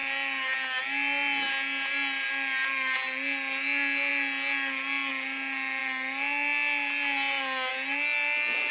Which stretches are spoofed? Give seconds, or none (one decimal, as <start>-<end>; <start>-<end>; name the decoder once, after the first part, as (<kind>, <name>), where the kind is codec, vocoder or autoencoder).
none